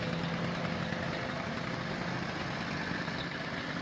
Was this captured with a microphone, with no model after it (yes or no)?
yes